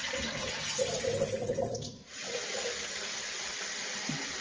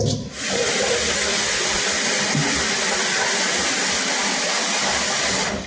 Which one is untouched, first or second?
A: second